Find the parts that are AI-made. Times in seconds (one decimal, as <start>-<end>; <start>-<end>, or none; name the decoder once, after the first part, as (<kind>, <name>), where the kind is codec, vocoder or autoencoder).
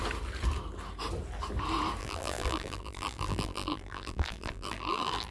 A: 2.0-5.3 (vocoder, BigVGAN v2)